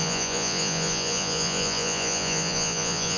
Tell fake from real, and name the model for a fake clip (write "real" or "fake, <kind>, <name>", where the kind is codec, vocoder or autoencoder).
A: fake, vocoder, Vocos